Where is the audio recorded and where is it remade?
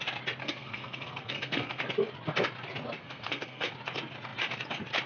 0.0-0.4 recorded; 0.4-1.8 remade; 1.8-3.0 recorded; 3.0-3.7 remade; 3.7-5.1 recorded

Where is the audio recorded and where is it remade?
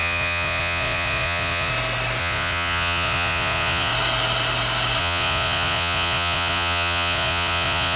0.0-1.7 remade; 1.7-2.2 recorded; 2.2-3.9 remade; 3.9-5.0 recorded; 5.0-8.0 remade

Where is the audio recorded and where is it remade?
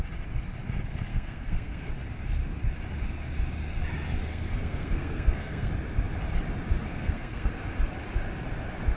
0.0-1.1 recorded; 1.1-1.9 remade; 1.9-4.3 recorded; 4.3-5.7 remade; 5.7-6.9 recorded; 6.9-7.5 remade; 7.5-9.0 recorded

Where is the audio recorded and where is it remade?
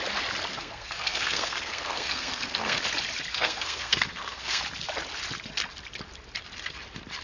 0.0-0.5 recorded; 0.5-2.8 remade; 2.8-3.3 recorded; 3.3-4.6 remade; 4.6-7.2 recorded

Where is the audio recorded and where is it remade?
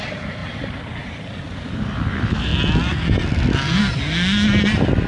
0.0-2.5 remade; 2.5-5.1 recorded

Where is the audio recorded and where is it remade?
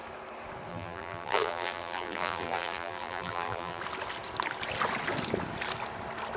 0.0-0.7 recorded; 0.7-3.8 remade; 3.8-6.4 recorded